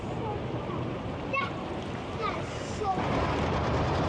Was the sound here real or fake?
fake